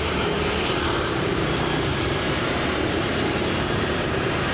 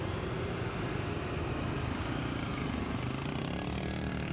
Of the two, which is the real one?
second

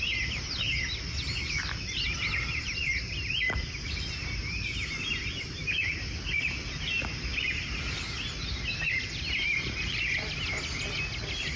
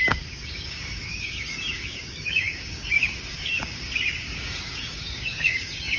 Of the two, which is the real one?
first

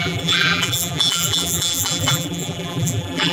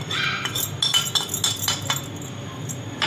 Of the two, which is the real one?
second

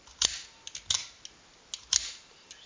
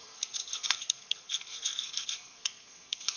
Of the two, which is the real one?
first